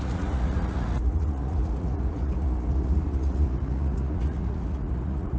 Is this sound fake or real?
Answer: fake